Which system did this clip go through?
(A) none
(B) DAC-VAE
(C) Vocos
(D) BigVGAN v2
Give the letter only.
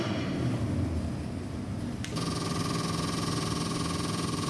A